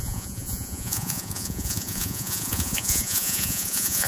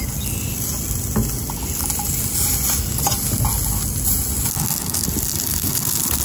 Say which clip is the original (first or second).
second